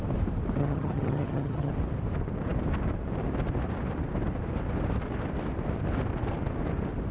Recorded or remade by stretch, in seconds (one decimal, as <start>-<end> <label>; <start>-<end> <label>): 0.0-0.6 recorded; 0.6-1.7 remade; 1.7-7.1 recorded